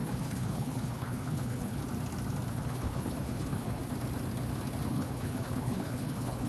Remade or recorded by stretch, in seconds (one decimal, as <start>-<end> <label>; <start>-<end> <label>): 0.0-1.8 remade; 1.8-2.5 recorded; 2.5-3.8 remade; 3.8-4.9 recorded; 4.9-6.5 remade